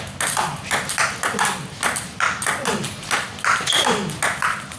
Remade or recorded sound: recorded